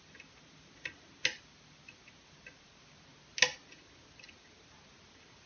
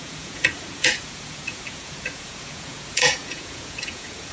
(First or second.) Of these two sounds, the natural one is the first